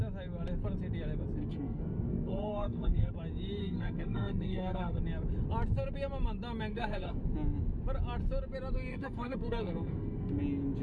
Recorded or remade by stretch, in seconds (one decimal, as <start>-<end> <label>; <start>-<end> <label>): 0.0-1.4 recorded; 1.4-3.1 remade; 3.1-3.6 recorded; 3.6-5.0 remade; 5.0-6.7 recorded; 6.7-7.2 remade; 7.2-8.9 recorded; 8.9-10.4 remade; 10.4-10.8 recorded